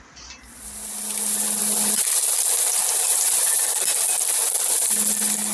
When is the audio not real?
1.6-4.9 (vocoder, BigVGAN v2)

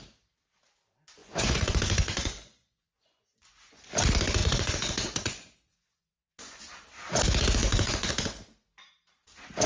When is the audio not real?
1.2-3.9 (vocoder, Vocos); 4.4-6.6; 7.6-8.1

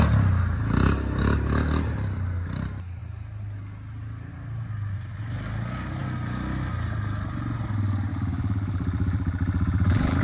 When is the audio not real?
8.1-10.2 (vocoder, BigVGAN v2)

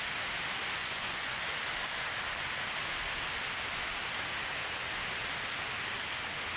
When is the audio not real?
0.8-1.4 (vocoder, Vocos)

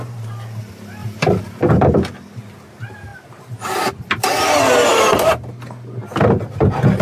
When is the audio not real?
1.0-1.7 (vocoder, BigVGAN v2)

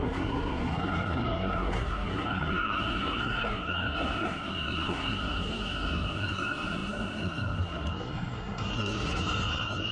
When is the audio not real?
0.0-9.9 (codec, SNAC)